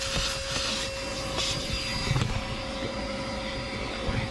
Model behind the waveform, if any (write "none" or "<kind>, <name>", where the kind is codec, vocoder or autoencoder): none